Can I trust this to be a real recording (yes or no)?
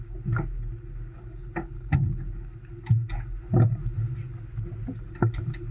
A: yes